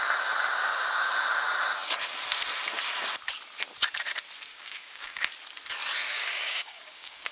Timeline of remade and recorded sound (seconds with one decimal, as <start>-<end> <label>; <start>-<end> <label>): 0.0-0.6 recorded; 0.6-1.1 remade; 1.1-4.5 recorded; 4.5-5.3 remade; 5.3-6.1 recorded; 6.1-7.3 remade